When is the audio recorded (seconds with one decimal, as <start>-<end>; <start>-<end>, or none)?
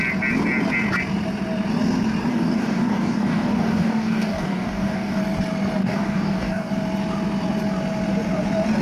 0.0-2.3; 5.2-5.8; 6.7-8.8